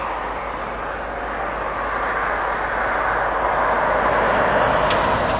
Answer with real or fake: real